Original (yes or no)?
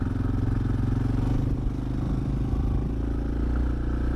yes